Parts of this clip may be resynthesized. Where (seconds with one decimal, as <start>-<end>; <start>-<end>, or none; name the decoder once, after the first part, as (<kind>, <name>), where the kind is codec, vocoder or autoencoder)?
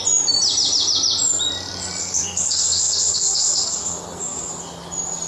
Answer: 2.0-4.5 (codec, SNAC)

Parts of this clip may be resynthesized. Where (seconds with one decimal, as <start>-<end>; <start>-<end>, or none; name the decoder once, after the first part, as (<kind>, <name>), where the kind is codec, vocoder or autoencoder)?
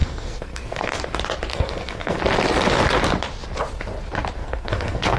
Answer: 0.0-1.0 (codec, SNAC); 1.5-2.2; 4.4-5.2